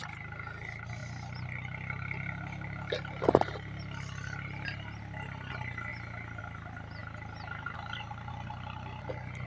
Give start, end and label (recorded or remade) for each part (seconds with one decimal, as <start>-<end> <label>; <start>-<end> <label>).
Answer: 0.0-9.5 recorded